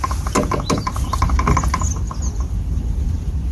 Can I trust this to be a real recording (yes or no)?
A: yes